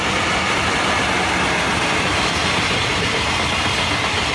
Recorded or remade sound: recorded